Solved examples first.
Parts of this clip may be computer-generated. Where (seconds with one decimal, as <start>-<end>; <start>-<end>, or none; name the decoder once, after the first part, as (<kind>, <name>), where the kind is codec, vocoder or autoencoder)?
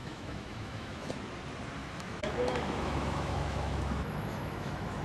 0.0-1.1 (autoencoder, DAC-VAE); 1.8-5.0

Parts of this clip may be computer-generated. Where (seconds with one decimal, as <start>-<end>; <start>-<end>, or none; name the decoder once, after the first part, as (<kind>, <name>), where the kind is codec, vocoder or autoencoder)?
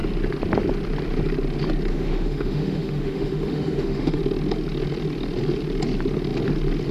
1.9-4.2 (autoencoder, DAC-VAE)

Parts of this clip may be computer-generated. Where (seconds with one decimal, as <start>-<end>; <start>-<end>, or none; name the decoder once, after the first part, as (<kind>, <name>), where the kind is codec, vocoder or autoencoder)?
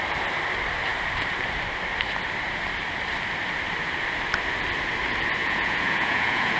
5.4-6.6 (vocoder, Vocos)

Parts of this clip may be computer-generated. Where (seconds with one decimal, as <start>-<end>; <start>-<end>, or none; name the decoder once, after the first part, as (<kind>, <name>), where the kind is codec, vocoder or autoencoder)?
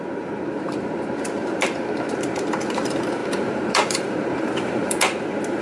0.0-5.6 (vocoder, BigVGAN v2)